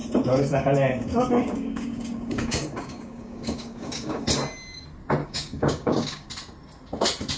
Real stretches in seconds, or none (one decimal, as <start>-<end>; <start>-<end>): 4.2-5.2; 6.3-7.4